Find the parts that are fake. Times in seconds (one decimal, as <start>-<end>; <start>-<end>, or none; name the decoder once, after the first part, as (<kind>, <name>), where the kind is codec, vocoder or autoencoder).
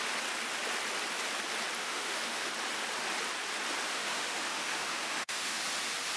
1.8-2.5 (autoencoder, DAC-VAE); 3.9-5.6